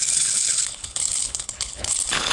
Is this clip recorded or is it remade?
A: remade